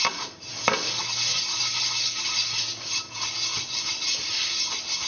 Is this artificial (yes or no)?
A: no